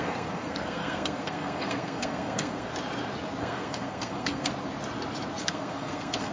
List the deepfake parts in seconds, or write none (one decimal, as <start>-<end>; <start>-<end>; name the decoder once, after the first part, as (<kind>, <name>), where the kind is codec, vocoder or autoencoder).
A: 0.0-2.7 (codec, SNAC); 3.4-4.5; 5.4-6.3

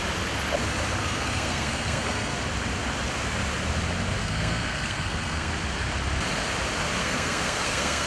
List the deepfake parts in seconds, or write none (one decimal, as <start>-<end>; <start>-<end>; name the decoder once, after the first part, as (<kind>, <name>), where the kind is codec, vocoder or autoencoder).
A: 1.0-2.4 (codec, SNAC); 4.2-5.5; 7.0-8.1

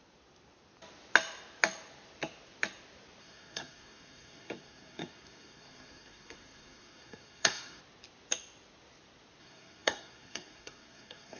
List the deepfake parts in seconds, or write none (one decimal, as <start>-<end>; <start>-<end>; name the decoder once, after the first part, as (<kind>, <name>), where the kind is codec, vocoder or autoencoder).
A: 3.2-7.8 (codec, SNAC); 9.4-11.4

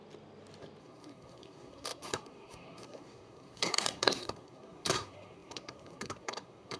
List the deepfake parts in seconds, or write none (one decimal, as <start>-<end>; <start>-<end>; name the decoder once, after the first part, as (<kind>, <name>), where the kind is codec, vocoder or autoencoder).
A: 0.8-6.8 (codec, SNAC)

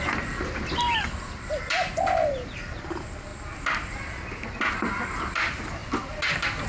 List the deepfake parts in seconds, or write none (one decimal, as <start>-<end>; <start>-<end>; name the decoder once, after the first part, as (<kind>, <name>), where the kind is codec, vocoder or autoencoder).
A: none

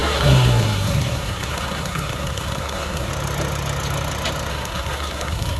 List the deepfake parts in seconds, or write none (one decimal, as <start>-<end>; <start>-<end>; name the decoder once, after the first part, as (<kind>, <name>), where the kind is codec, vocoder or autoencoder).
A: 0.0-3.1 (codec, SNAC); 4.5-5.6

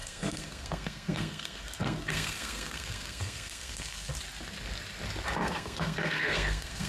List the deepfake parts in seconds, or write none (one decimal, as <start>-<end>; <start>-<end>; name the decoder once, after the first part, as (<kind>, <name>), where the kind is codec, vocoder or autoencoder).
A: 0.0-4.1 (codec, SNAC); 5.4-6.9

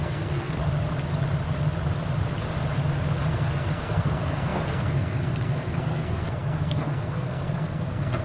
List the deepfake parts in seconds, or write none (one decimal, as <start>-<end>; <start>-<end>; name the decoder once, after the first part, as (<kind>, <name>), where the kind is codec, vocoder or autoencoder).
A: 0.0-0.6 (codec, SNAC); 3.3-8.2